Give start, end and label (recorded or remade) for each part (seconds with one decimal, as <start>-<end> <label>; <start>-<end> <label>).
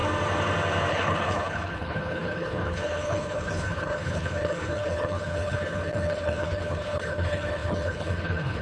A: 0.0-0.9 recorded; 0.9-8.6 remade